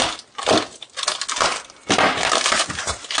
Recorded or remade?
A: recorded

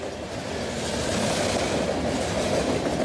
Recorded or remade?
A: recorded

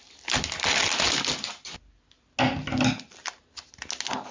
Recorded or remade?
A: recorded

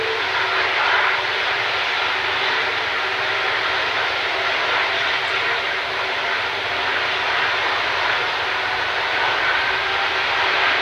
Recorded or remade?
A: recorded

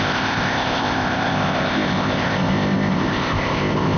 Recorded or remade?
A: remade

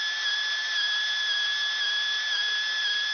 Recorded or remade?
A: recorded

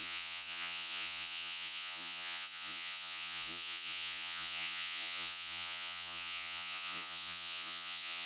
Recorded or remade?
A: remade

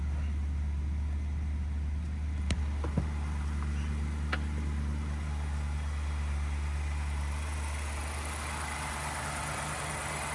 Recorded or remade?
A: recorded